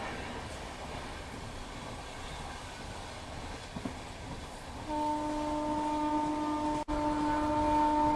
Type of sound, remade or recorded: recorded